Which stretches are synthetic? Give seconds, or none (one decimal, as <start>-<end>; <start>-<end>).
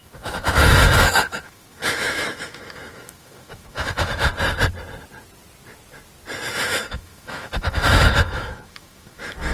0.0-4.3; 6.5-9.5